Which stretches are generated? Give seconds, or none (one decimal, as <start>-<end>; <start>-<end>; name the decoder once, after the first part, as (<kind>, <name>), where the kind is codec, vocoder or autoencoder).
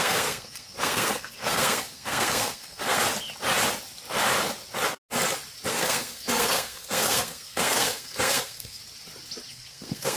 0.0-3.0 (codec, SNAC); 5.7-8.8; 9.5-10.2